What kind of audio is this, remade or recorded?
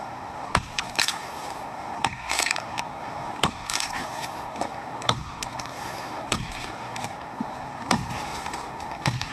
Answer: remade